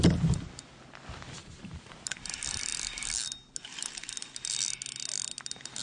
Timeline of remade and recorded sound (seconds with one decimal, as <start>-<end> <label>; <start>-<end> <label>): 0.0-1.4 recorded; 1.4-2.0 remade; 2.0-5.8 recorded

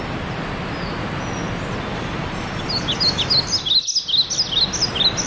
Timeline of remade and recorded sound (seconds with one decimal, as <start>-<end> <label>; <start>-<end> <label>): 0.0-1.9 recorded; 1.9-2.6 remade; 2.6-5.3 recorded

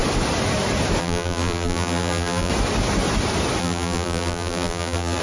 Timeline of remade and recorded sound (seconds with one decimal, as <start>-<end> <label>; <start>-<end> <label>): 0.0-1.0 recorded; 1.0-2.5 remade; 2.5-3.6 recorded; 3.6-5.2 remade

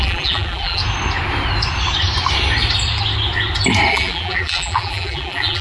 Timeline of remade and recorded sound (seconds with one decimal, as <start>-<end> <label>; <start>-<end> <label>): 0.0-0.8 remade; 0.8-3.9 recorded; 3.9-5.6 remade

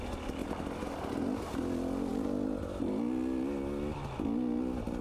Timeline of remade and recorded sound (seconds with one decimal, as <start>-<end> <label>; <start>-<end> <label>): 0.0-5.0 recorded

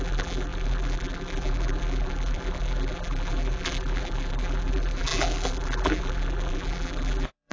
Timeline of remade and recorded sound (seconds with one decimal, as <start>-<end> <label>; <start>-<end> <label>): 0.0-7.5 remade